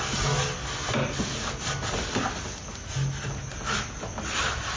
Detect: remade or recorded recorded